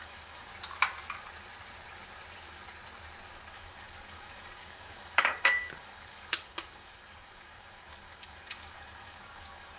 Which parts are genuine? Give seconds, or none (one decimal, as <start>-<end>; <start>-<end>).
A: 0.5-3.5